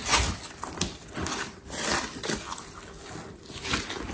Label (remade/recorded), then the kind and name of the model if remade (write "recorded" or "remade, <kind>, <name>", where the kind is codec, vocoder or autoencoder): recorded